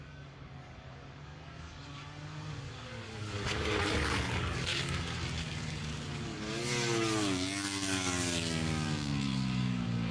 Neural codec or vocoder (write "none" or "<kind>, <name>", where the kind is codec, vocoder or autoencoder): codec, DAC